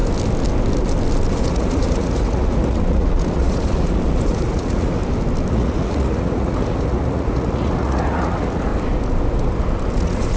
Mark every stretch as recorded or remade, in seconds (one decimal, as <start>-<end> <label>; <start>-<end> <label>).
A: 0.0-1.3 recorded; 1.3-5.0 remade; 5.0-5.5 recorded; 5.5-8.7 remade; 8.7-10.0 recorded; 10.0-10.4 remade